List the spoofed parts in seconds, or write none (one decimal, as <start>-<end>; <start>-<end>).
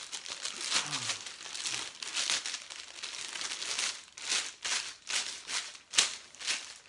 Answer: none